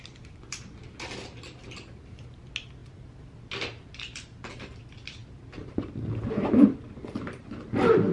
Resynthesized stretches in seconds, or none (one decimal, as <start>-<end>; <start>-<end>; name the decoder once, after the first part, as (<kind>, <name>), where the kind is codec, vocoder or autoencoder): none